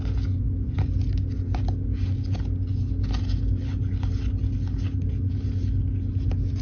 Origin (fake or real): real